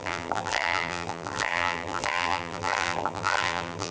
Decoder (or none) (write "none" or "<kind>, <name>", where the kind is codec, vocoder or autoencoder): vocoder, BigVGAN v2